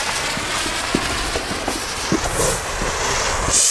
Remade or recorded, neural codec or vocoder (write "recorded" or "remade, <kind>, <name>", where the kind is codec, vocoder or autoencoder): recorded